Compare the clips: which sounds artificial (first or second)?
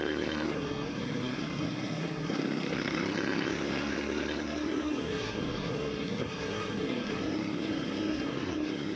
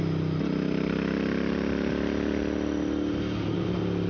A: first